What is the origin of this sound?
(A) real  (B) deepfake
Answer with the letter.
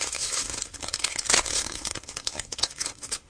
B